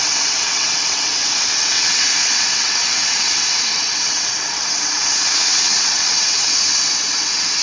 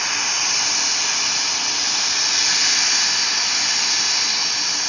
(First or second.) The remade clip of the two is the first